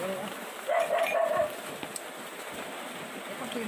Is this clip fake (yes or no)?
no